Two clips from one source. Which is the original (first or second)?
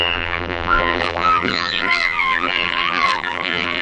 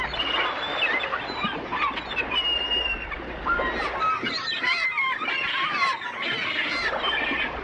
second